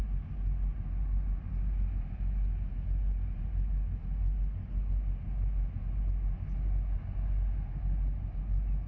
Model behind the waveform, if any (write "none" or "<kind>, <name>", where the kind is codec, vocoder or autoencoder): none